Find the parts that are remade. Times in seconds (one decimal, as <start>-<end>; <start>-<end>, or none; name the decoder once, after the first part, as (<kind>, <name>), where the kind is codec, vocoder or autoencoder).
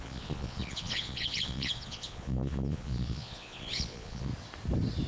0.0-4.3 (vocoder, Vocos)